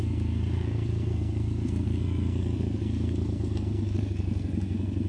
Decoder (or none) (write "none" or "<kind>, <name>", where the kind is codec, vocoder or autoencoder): codec, SNAC